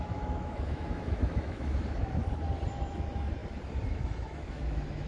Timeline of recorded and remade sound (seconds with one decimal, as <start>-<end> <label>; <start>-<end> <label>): 0.0-2.2 remade; 2.2-2.7 recorded; 2.7-3.4 remade; 3.4-3.9 recorded; 3.9-5.1 remade